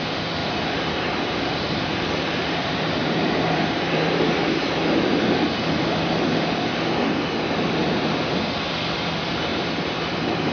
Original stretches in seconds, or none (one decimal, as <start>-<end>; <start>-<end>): 0.0-0.4; 4.3-5.1; 5.7-7.8; 8.3-9.5